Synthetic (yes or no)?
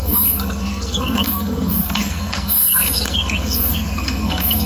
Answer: yes